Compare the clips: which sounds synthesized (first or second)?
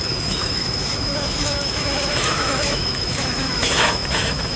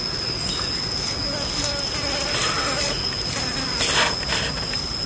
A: first